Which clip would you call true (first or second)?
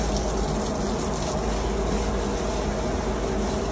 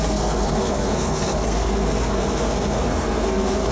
first